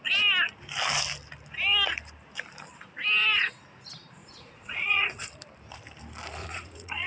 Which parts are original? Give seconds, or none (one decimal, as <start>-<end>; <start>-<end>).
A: 0.0-4.2; 5.3-6.4